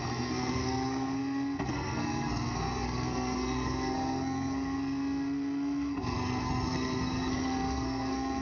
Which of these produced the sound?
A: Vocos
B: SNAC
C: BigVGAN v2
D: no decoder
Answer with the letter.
B